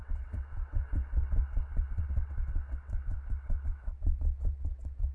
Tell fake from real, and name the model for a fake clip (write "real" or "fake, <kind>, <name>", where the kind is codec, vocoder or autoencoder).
fake, vocoder, WaveNeXt